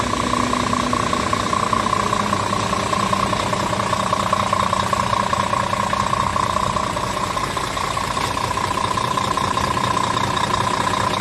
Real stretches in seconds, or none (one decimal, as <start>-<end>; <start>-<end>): 0.0-6.3; 10.5-11.2